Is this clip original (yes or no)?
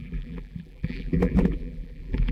no